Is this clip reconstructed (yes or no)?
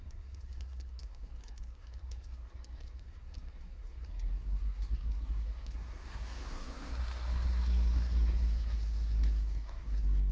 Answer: yes